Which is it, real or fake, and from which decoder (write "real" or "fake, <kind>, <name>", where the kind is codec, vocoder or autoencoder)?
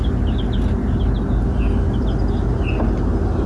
real